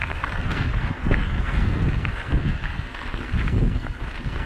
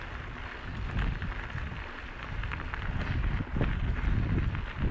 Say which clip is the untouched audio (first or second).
second